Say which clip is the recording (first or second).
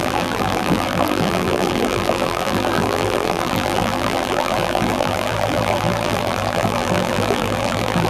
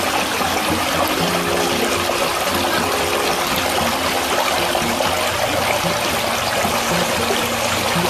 second